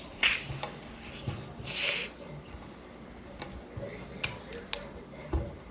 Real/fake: real